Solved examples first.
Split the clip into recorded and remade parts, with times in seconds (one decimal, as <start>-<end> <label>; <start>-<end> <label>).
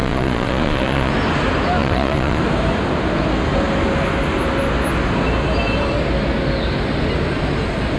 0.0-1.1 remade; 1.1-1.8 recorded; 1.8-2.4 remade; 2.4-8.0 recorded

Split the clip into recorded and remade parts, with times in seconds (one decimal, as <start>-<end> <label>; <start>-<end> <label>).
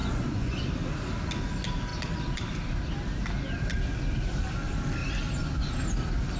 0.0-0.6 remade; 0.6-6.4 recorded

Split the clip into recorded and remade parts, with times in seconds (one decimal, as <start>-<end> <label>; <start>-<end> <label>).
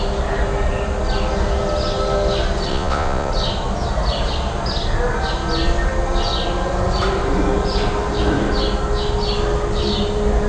0.0-2.7 recorded; 2.7-3.3 remade; 3.3-10.5 recorded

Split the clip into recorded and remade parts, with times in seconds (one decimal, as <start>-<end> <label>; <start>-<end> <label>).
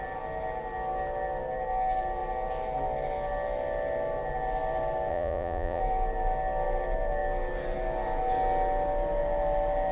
0.0-5.1 recorded; 5.1-5.8 remade; 5.8-9.9 recorded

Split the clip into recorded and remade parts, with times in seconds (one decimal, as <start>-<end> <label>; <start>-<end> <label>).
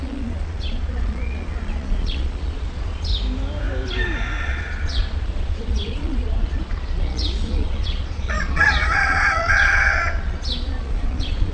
0.0-3.1 remade; 3.1-4.4 recorded; 4.4-11.5 remade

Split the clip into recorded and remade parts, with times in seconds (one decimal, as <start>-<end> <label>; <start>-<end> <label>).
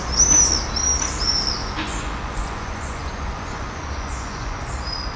0.0-1.6 recorded; 1.6-4.7 remade; 4.7-5.2 recorded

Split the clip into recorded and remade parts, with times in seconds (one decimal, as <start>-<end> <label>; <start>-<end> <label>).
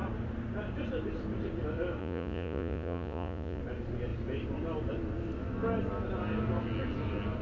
0.0-2.0 recorded; 2.0-3.6 remade; 3.6-7.4 recorded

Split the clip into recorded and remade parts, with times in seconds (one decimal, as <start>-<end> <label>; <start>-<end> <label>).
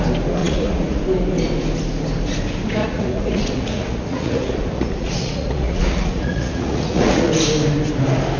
0.0-0.4 recorded; 0.4-1.0 remade; 1.0-2.8 recorded; 2.8-7.3 remade; 7.3-8.4 recorded